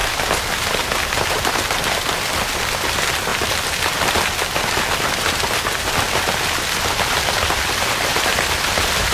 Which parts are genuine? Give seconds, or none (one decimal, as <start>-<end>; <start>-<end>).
1.5-3.3; 4.2-9.1